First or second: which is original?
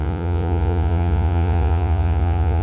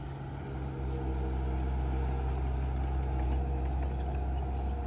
second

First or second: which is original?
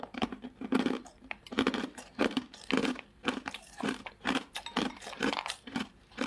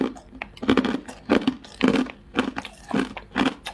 second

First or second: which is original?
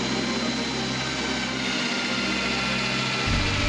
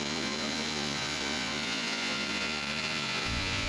first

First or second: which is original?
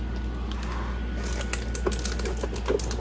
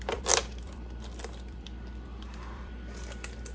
first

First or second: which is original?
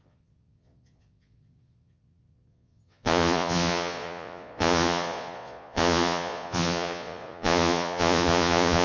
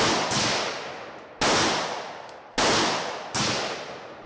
second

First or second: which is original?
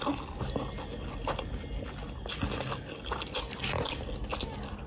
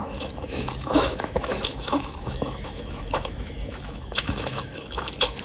first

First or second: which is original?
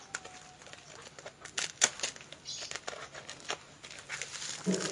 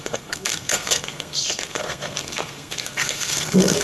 first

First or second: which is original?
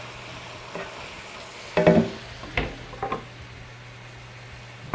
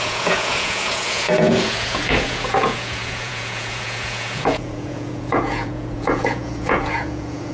first